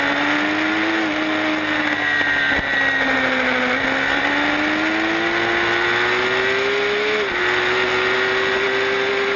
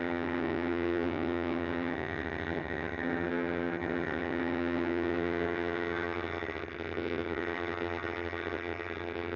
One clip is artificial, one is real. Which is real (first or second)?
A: first